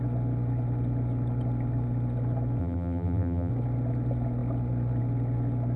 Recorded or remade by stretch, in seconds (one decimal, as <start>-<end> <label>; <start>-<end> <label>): 0.0-2.6 recorded; 2.6-3.5 remade; 3.5-5.8 recorded